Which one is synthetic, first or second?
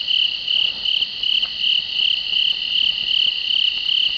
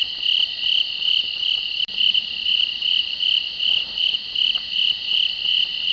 second